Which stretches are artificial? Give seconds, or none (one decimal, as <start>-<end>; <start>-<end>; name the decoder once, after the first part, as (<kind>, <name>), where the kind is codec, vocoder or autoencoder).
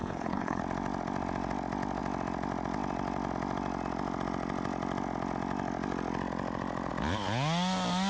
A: 0.0-0.6 (codec, HILCodec)